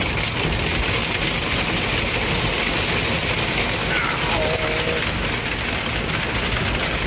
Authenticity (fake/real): real